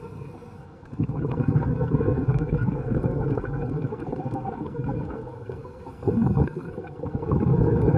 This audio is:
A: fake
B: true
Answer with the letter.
A